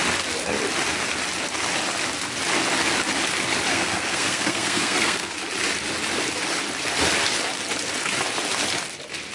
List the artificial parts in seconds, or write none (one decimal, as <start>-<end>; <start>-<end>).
3.7-5.3